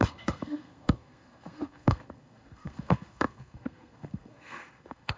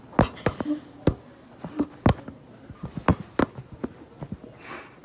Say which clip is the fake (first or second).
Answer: first